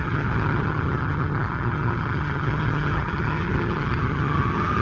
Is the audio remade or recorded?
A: remade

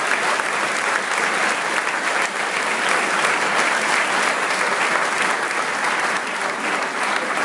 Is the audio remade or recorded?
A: recorded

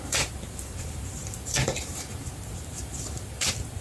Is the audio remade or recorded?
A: remade